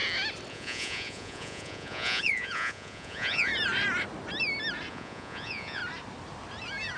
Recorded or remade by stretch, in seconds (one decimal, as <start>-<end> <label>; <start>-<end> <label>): 0.0-0.5 recorded; 0.5-3.5 remade; 3.5-4.9 recorded; 4.9-5.8 remade; 5.8-7.0 recorded